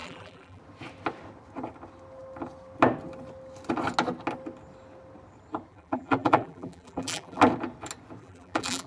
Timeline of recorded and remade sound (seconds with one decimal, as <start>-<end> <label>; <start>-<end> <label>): 0.0-0.6 remade; 0.6-5.7 recorded; 5.7-7.4 remade; 7.4-8.2 recorded; 8.2-8.9 remade